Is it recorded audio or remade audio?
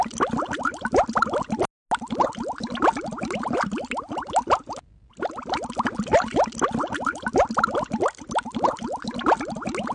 recorded